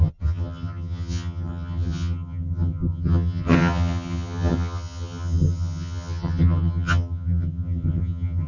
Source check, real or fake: fake